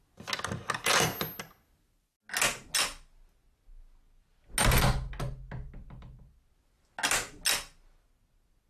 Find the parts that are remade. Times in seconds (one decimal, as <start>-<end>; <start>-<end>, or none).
none